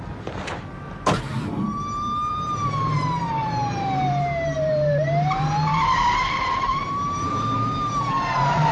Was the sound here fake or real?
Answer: fake